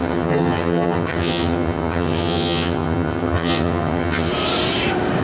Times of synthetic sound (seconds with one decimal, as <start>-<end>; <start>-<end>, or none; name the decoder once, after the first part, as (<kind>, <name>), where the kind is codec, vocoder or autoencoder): 0.0-4.3 (vocoder, HiFi-GAN)